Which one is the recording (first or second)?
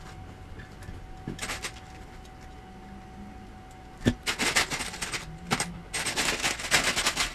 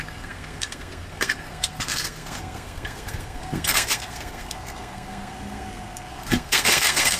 first